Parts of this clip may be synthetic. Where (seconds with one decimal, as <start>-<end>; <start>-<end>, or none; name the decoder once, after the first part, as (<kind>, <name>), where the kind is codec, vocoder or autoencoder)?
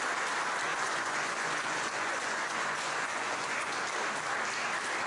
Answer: 0.7-3.8 (vocoder, Vocos)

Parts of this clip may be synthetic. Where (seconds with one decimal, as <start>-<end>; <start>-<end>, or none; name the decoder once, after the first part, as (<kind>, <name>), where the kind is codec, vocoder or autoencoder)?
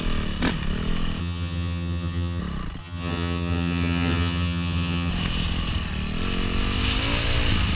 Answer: 1.2-2.4 (vocoder, HiFi-GAN); 2.8-5.1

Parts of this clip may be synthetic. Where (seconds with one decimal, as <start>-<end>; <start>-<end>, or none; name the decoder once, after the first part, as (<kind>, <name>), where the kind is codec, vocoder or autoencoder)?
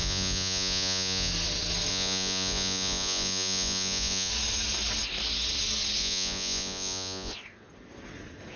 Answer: 0.0-1.3 (vocoder, Vocos); 1.9-4.3; 6.0-7.3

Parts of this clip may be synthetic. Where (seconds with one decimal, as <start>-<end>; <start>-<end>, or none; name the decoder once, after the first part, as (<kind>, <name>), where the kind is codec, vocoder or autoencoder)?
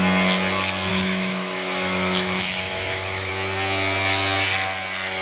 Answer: 0.9-3.3 (autoencoder, DAC-VAE)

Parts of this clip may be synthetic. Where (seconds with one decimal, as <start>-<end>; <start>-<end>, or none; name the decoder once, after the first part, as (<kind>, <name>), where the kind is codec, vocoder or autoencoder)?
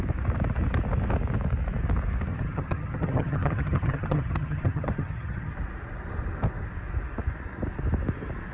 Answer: 2.3-5.5 (vocoder, HiFi-GAN)